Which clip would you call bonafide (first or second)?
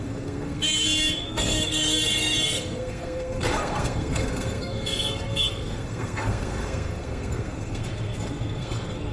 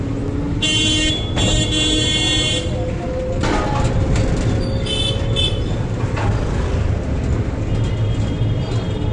second